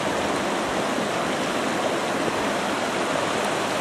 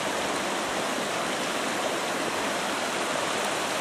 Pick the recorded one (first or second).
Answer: first